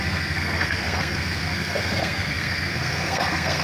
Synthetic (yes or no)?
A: yes